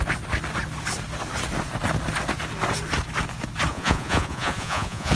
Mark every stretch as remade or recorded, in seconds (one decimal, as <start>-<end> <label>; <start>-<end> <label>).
0.0-3.7 recorded; 3.7-5.1 remade